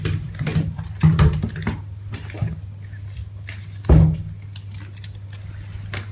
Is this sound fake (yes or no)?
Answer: no